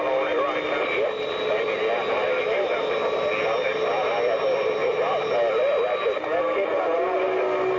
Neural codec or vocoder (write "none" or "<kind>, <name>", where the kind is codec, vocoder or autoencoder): none